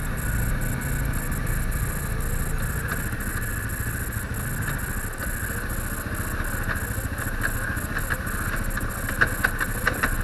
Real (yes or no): yes